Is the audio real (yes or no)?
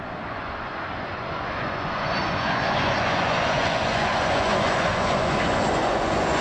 no